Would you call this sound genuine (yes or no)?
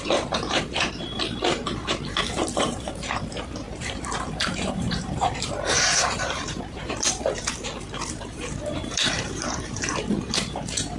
no